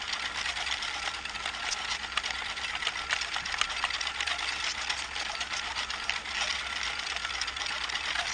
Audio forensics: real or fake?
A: real